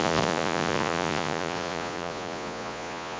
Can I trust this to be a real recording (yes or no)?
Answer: no